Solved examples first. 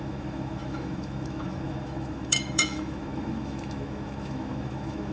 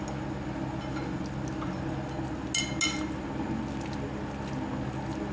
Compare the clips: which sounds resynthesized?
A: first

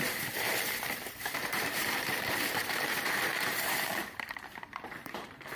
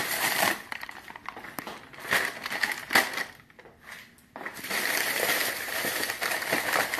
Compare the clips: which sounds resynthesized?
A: first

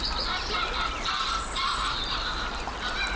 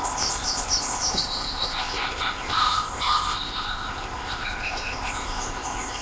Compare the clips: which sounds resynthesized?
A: second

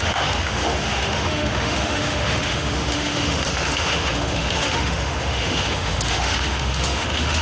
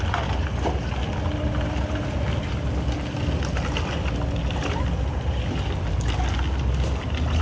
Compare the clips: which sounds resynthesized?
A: first